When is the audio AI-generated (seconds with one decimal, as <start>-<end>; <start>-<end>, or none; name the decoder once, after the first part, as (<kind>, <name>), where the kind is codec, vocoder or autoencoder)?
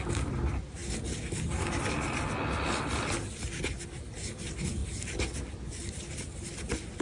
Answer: none